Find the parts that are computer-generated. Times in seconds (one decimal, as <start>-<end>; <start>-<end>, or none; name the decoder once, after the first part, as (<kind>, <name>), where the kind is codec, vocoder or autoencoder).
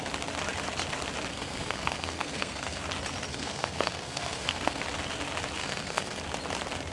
1.3-2.8 (codec, SNAC); 3.3-4.8; 5.6-6.2